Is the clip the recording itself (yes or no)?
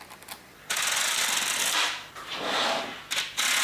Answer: yes